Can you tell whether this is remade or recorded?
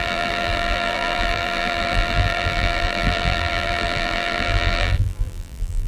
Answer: remade